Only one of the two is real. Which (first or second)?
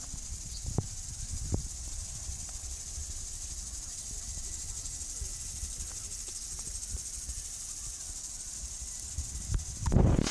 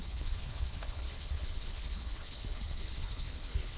first